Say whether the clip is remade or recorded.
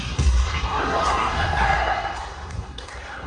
remade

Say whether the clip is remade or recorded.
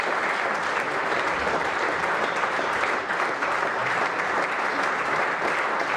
recorded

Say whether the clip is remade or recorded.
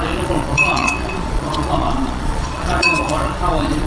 remade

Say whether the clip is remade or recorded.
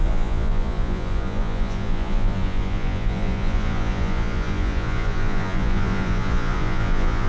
remade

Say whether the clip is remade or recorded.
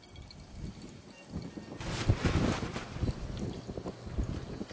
recorded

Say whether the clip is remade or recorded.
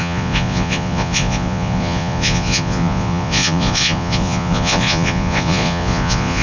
remade